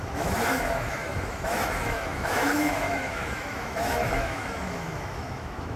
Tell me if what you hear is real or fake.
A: fake